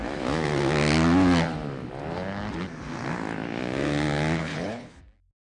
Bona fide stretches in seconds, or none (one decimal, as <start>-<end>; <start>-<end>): 0.0-4.4; 5.0-5.5